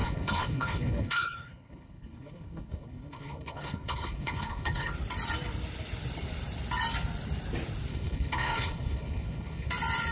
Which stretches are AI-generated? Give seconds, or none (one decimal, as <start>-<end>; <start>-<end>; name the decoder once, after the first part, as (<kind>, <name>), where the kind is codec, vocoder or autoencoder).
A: 0.0-4.9 (codec, HILCodec); 7.9-9.7